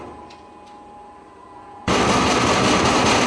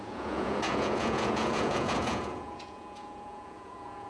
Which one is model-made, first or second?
second